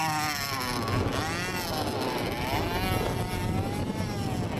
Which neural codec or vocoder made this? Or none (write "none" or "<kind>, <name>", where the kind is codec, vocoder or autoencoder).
none